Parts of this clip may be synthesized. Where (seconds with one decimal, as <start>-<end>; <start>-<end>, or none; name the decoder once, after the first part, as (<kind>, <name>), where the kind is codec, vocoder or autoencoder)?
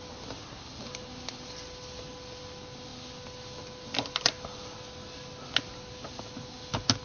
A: none